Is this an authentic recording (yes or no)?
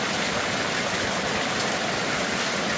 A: yes